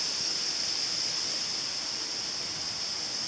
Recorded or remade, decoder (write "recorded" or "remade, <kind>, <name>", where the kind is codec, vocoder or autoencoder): recorded